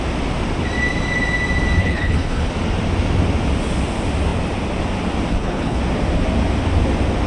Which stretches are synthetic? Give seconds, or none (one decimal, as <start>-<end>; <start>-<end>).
1.8-2.5; 5.3-5.8

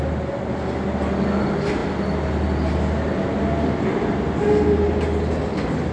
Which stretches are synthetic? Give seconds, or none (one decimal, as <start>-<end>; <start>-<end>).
none

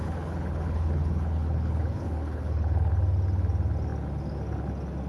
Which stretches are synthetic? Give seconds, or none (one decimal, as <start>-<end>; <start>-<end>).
0.0-2.9

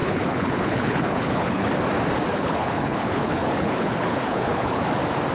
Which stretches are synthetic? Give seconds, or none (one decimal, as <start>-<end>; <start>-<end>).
0.0-1.7; 2.3-4.8

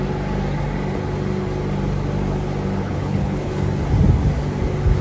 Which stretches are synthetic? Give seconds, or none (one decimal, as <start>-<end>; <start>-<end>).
2.8-3.6

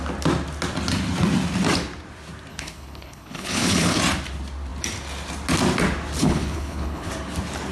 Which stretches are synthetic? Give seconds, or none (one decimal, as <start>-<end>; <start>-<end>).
2.5-4.0; 6.2-7.1

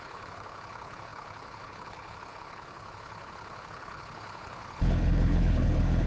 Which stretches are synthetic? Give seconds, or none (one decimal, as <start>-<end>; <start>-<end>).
0.0-6.1